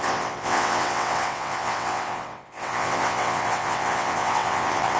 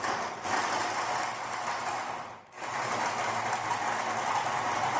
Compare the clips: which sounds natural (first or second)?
second